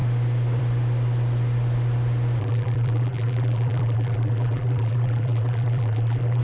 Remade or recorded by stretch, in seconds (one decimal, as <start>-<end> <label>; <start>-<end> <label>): 0.0-2.4 recorded; 2.4-6.4 remade